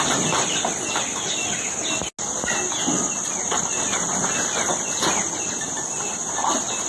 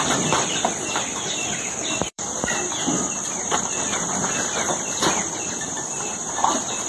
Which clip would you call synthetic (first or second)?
second